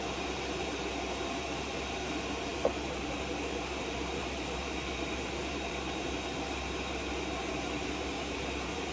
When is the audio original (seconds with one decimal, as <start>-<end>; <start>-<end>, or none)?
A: none